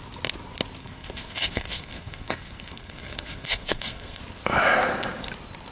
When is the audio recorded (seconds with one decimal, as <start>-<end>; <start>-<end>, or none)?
0.0-0.8; 4.2-5.7